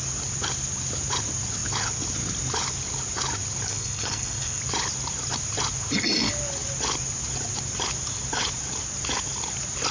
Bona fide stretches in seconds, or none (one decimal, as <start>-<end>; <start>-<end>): 0.0-3.7; 4.6-9.9